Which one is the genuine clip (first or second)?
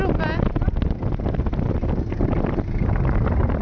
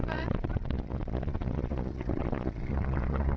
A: first